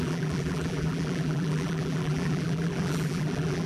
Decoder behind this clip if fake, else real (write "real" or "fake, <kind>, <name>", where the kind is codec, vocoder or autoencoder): fake, vocoder, BigVGAN v2